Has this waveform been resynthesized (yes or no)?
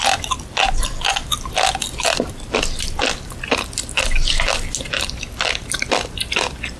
no